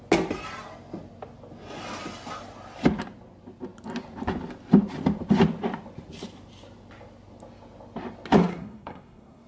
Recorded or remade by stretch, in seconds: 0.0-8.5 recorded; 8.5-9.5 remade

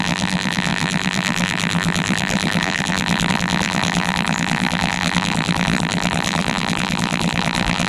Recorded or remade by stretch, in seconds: 0.0-7.9 remade

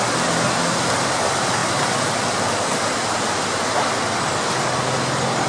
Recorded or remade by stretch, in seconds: 0.0-5.5 recorded

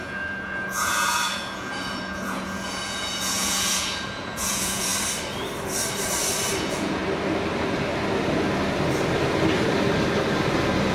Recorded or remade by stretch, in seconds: 0.0-4.9 remade; 4.9-6.6 recorded; 6.6-7.0 remade; 7.0-10.9 recorded